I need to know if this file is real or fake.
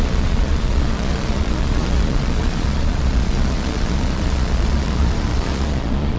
fake